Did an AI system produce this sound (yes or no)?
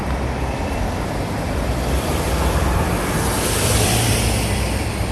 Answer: yes